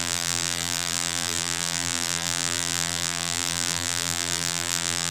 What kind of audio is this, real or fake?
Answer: fake